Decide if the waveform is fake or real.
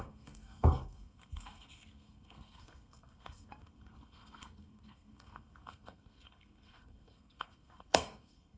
fake